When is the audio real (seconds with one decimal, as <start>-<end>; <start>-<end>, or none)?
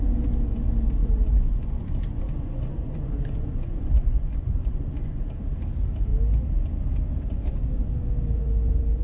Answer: 0.0-1.0; 5.2-9.0